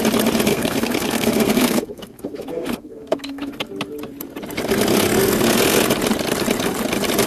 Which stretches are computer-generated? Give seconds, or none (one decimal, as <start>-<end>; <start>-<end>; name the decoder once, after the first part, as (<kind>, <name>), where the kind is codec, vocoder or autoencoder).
0.5-3.5 (codec, SNAC)